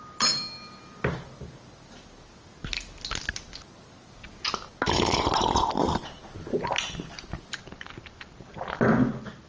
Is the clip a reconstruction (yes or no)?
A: no